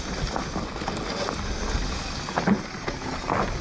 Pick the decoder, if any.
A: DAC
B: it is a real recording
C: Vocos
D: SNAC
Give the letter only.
B